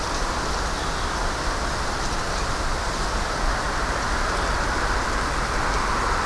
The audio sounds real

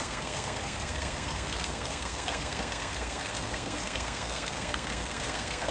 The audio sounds fake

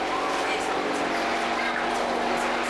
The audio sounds real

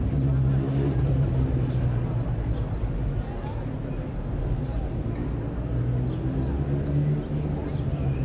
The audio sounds real